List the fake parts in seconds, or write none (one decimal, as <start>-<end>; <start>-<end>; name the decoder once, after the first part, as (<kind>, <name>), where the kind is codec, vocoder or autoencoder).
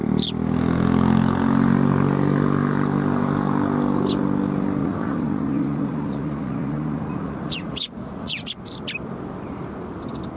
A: 4.8-8.5 (vocoder, Vocos)